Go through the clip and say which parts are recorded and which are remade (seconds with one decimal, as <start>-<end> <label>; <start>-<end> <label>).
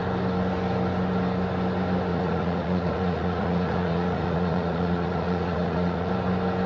0.0-2.1 recorded; 2.1-6.1 remade; 6.1-6.7 recorded